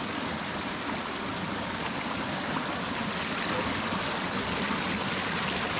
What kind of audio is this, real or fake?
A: real